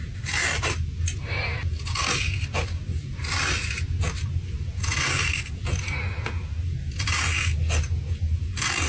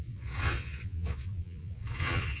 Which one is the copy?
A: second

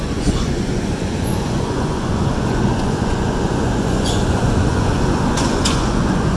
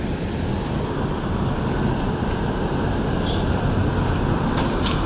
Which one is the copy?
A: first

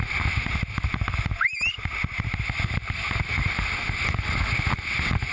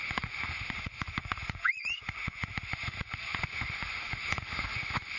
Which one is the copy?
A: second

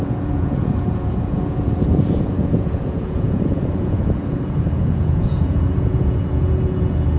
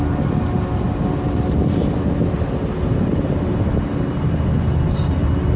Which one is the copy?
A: first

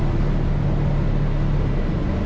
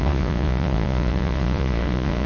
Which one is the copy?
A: second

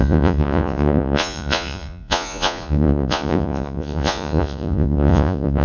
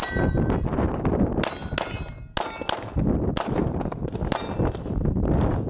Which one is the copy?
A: first